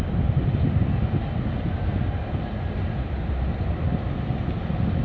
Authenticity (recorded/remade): recorded